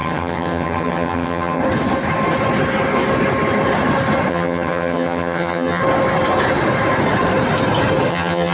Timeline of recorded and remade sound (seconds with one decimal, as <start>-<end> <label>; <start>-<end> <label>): 0.0-1.6 remade; 1.6-4.3 recorded; 4.3-5.8 remade; 5.8-8.1 recorded; 8.1-8.5 remade